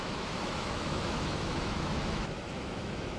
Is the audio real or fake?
fake